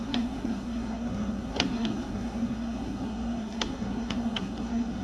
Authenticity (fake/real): fake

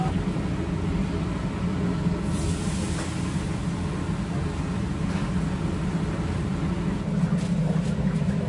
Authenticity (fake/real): real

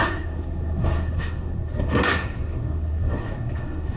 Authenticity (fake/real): fake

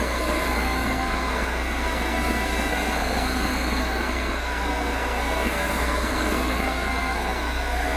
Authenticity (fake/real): fake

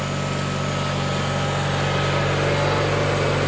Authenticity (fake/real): real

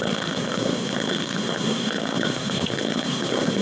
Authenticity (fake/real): fake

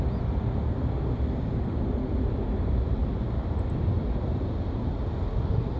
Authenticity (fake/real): real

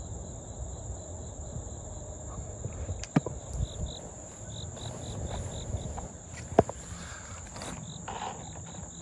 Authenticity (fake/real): real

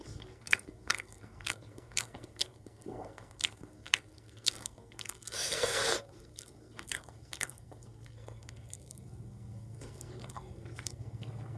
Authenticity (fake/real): fake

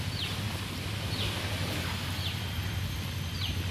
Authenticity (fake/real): real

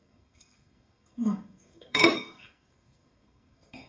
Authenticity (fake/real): fake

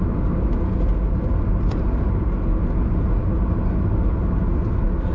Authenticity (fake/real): real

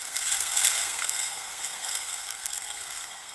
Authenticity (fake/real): fake